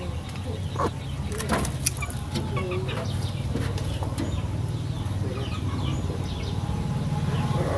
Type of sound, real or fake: real